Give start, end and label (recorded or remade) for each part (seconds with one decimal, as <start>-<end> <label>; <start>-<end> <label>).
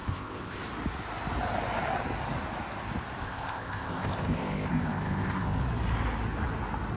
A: 0.0-0.6 remade; 0.6-3.2 recorded; 3.2-5.6 remade; 5.6-7.0 recorded